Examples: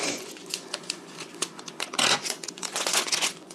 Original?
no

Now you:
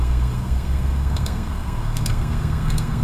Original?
no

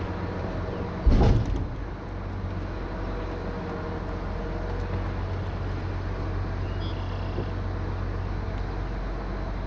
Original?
yes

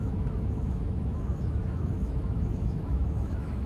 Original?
no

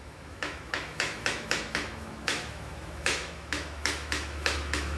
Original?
no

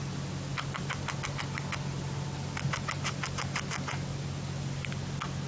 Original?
yes